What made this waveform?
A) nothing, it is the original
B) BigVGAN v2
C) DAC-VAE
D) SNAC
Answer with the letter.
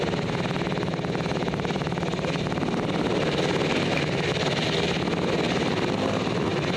A